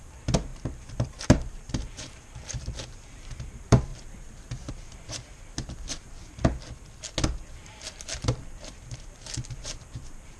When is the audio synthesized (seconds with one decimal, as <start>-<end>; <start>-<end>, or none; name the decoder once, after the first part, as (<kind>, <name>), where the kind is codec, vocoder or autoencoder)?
0.0-3.9 (vocoder, BigVGAN v2); 4.7-6.2; 7.5-10.4